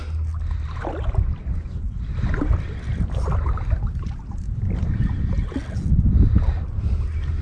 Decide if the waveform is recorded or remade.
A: recorded